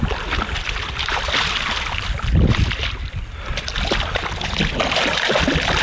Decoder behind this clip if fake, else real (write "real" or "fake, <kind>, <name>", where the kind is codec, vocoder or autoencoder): real